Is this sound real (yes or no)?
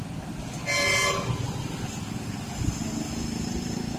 yes